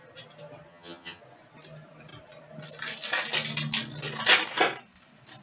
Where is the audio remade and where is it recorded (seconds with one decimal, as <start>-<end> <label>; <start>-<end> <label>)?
0.0-0.7 recorded; 0.7-1.2 remade; 1.2-5.4 recorded

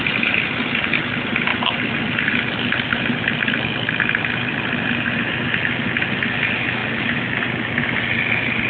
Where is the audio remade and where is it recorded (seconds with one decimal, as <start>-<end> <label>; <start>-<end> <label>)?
0.0-8.7 recorded

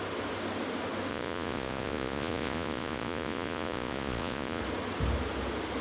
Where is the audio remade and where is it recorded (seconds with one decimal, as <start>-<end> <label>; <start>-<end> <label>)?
0.0-1.1 recorded; 1.1-4.6 remade; 4.6-5.8 recorded

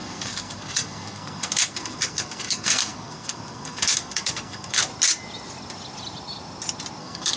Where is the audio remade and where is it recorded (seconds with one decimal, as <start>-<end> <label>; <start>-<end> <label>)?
0.0-4.9 remade; 4.9-7.0 recorded; 7.0-7.4 remade